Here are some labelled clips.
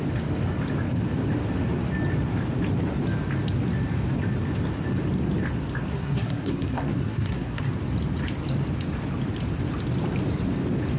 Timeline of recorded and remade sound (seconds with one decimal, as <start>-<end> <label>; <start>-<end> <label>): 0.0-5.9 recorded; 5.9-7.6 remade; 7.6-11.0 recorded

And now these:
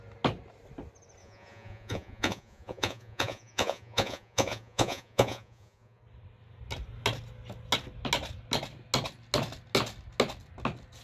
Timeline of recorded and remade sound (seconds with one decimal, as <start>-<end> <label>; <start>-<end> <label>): 0.0-1.2 recorded; 1.2-6.0 remade; 6.0-11.0 recorded

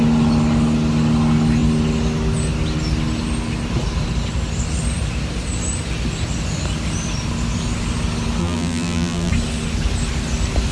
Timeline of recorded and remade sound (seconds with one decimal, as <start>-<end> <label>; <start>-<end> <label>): 0.0-8.4 recorded; 8.4-9.3 remade; 9.3-10.7 recorded

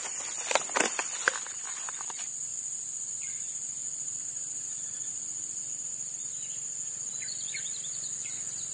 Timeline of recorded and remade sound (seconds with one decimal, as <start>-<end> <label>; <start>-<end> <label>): 0.0-8.7 recorded

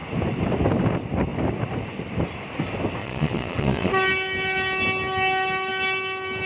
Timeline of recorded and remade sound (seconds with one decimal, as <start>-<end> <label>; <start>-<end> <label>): 0.0-3.0 recorded; 3.0-3.9 remade; 3.9-6.5 recorded